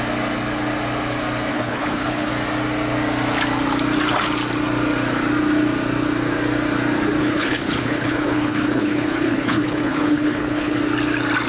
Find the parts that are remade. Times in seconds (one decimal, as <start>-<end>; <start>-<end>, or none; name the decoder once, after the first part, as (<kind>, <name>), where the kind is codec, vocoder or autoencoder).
1.5-2.3 (codec, HILCodec); 7.2-10.8